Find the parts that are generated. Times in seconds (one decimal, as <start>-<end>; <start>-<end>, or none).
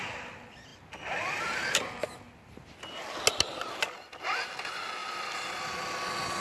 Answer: 5.0-5.7